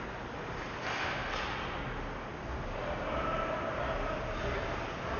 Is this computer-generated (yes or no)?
no